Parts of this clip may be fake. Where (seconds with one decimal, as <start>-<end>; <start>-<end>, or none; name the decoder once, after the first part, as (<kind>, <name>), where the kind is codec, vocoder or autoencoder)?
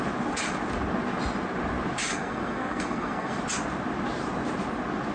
2.1-3.4 (codec, SNAC)